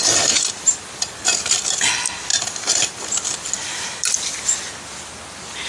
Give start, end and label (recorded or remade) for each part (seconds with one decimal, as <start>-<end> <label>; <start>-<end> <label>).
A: 0.0-5.7 recorded